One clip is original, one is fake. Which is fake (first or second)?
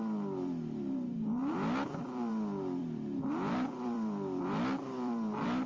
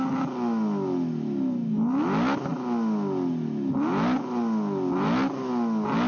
first